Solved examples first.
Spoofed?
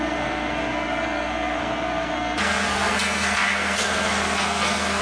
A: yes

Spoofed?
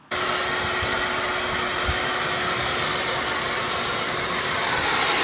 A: no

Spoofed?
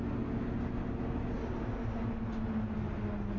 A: no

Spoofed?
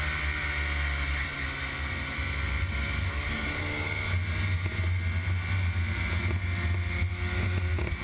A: no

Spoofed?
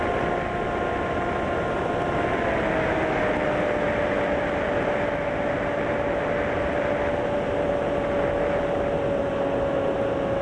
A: no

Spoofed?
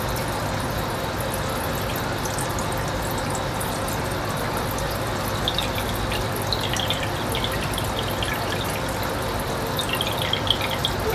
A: no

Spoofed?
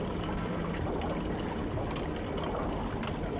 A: no